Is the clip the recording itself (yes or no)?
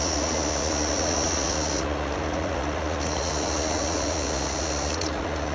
no